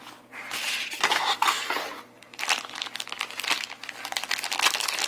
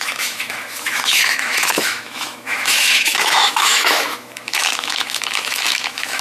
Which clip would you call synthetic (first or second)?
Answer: second